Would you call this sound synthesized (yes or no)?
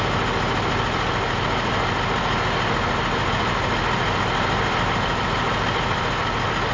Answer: no